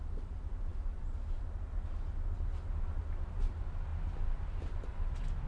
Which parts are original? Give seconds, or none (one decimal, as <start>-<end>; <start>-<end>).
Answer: 0.0-5.5

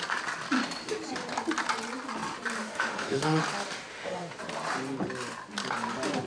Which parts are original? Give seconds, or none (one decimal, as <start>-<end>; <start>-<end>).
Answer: 0.0-2.6; 3.4-3.9; 4.4-6.3

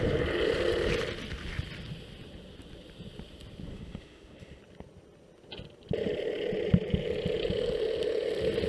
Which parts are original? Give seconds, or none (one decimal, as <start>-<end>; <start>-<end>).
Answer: 0.0-3.7; 4.6-8.7

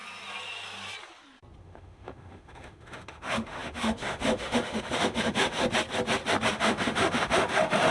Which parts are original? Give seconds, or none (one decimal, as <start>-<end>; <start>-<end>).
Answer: 0.0-1.6; 5.6-6.5